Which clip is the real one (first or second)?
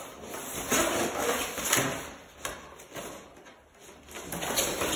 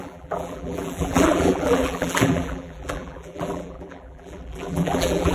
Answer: first